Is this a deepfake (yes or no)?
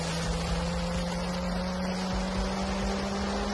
no